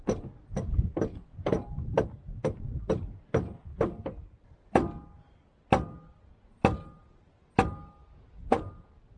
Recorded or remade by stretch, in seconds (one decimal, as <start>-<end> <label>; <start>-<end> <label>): 0.0-9.2 recorded